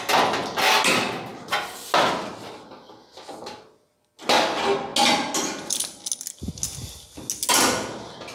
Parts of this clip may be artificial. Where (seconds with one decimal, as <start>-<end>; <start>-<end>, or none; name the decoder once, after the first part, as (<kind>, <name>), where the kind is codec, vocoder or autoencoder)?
none